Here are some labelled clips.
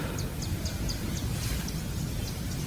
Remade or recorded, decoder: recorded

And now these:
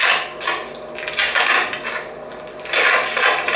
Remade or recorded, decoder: recorded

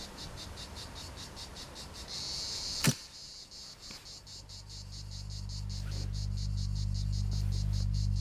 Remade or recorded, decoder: recorded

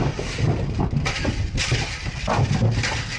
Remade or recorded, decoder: recorded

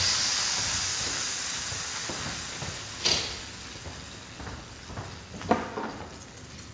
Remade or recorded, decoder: recorded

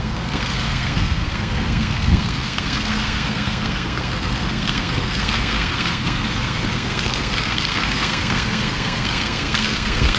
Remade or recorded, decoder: remade, codec, SNAC